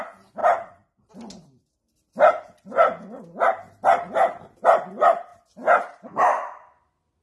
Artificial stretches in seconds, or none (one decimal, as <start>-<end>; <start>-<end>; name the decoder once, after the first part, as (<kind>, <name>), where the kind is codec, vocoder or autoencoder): 0.4-1.1 (vocoder, BigVGAN v2)